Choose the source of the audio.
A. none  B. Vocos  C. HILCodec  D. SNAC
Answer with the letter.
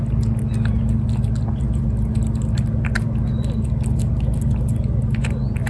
A